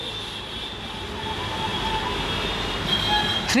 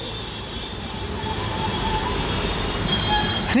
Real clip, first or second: first